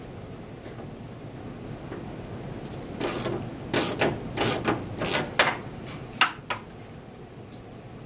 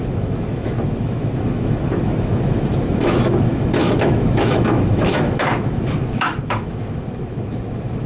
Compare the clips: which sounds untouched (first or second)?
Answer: first